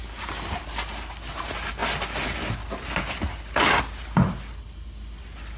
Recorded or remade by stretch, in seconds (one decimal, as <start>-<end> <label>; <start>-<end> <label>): 0.0-5.6 recorded